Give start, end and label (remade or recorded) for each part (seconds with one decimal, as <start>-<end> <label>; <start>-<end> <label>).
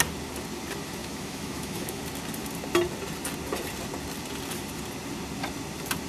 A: 0.0-1.0 recorded; 1.0-2.0 remade; 2.0-6.1 recorded